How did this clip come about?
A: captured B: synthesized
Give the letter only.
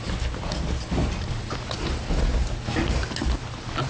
A